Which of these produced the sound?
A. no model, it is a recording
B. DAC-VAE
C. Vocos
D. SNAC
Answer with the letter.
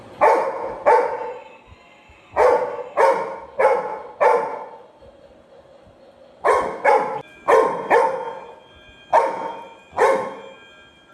A